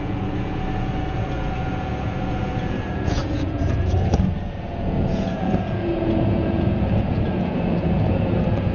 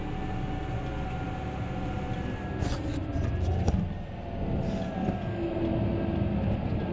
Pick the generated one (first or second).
first